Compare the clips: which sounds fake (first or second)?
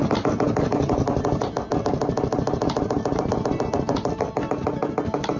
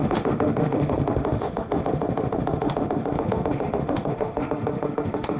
second